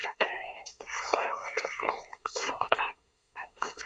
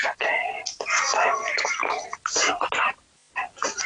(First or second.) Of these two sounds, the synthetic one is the first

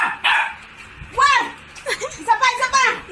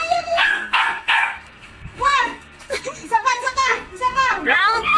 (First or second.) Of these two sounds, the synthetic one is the second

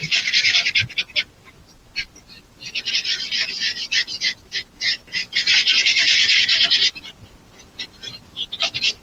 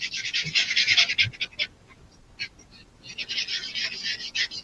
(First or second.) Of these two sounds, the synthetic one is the first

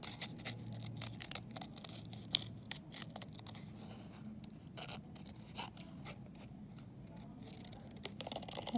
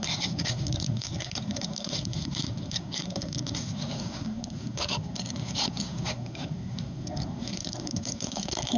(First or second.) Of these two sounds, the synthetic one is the second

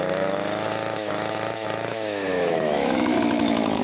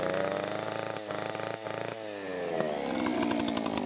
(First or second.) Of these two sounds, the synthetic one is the first